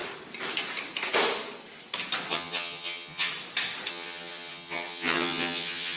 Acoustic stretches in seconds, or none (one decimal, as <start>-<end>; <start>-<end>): 0.0-2.3; 3.3-3.9